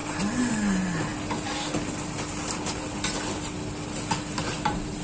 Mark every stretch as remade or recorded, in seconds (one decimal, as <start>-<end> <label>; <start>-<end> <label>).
0.0-5.0 recorded